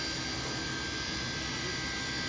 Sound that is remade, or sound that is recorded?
recorded